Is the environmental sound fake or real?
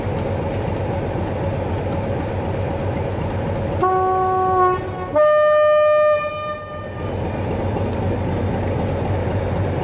real